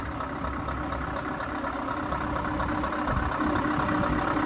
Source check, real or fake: real